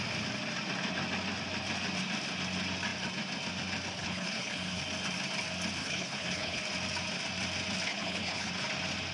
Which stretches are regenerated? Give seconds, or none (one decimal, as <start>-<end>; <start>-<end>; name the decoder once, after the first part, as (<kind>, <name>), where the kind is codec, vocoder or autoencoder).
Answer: 4.0-4.8 (codec, HILCodec); 5.8-6.6; 7.9-8.5

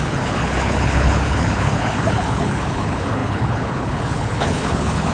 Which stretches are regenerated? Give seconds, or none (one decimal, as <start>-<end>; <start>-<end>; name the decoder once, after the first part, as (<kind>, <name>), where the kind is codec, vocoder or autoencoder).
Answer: 0.0-5.1 (codec, HILCodec)

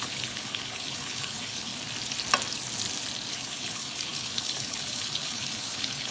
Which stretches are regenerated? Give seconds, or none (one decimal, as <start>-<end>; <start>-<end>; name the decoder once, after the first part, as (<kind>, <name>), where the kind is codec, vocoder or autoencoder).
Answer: 0.0-1.7 (codec, HILCodec); 3.3-6.1

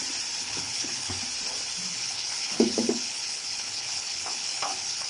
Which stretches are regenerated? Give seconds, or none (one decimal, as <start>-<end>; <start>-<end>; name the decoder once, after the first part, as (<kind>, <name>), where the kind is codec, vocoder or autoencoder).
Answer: 0.4-1.2 (codec, HILCodec); 1.9-5.1